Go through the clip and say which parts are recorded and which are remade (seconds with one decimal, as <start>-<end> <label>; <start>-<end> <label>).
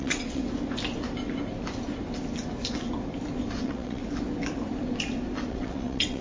0.0-0.4 remade; 0.4-3.6 recorded; 3.6-4.0 remade; 4.0-5.5 recorded; 5.5-6.2 remade